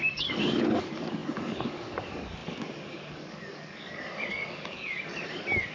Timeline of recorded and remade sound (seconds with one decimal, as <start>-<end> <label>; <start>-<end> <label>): 0.0-5.7 remade